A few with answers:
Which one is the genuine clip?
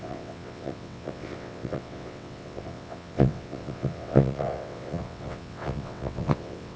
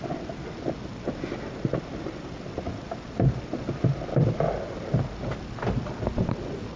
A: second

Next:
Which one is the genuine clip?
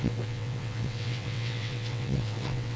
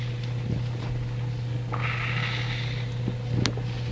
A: second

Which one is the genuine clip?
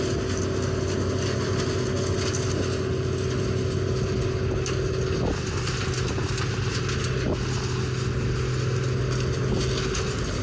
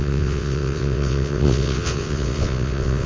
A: first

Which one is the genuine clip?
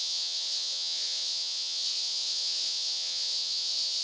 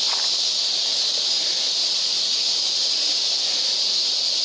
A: second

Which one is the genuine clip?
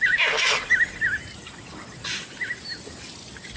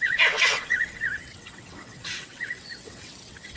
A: first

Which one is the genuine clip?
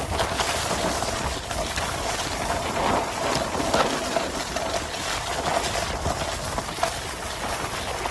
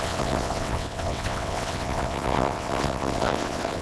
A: first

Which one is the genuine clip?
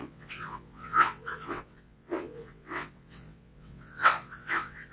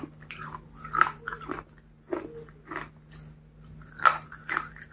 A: second